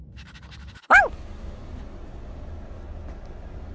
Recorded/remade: recorded